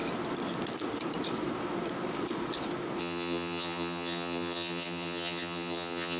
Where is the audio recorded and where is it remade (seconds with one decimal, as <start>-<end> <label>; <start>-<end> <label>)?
0.0-3.0 recorded; 3.0-6.2 remade